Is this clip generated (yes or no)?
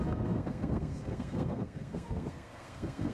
yes